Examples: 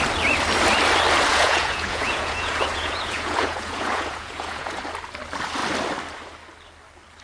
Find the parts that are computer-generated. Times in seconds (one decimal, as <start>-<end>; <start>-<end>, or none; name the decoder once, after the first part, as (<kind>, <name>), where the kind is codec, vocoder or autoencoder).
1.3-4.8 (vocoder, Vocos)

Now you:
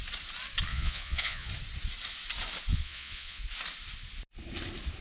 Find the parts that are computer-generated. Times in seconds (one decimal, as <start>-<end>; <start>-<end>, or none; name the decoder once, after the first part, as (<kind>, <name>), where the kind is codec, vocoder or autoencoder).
0.7-1.5 (vocoder, Vocos); 2.7-3.4

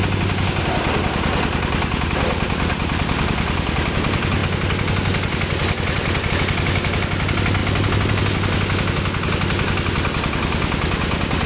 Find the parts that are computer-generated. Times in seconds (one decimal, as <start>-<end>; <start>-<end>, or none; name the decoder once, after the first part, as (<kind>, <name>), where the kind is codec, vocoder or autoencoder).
none

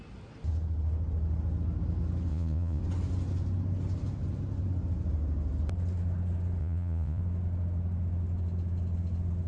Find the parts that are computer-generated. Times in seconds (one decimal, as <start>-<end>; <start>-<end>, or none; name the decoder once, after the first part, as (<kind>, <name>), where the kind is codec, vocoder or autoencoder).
2.3-2.8 (vocoder, Vocos); 6.6-7.2